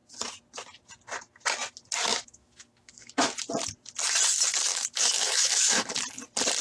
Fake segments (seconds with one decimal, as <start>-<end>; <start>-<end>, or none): 2.1-3.3; 4.7-6.0